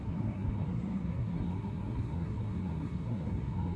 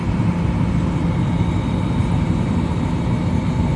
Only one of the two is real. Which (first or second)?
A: second